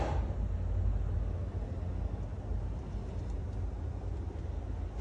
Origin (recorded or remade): recorded